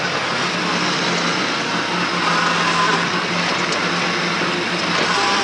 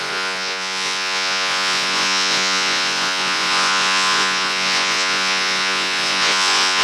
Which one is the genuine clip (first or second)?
first